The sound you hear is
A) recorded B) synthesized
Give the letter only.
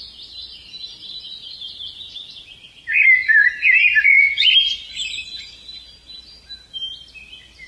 A